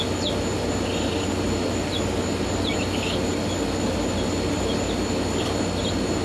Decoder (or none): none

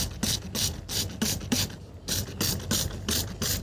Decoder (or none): none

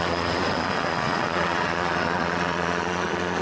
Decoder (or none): vocoder, Vocos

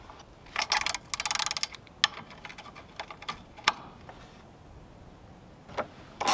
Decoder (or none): none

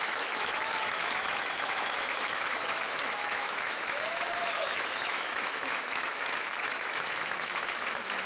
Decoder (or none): autoencoder, DAC-VAE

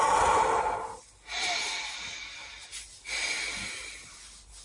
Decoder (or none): none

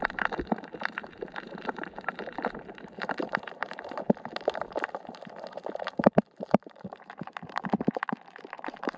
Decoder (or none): vocoder, BigVGAN v2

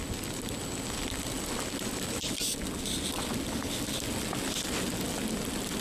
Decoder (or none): none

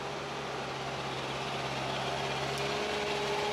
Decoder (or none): none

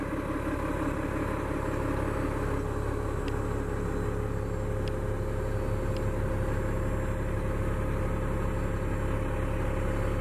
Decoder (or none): none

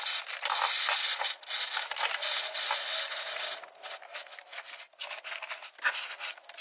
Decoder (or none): none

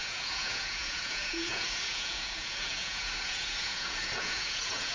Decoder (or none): vocoder, Vocos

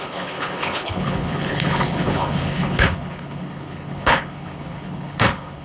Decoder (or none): codec, HILCodec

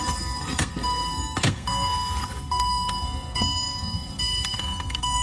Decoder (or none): codec, SNAC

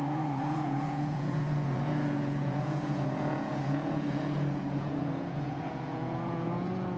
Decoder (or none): vocoder, Vocos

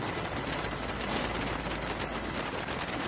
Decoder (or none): none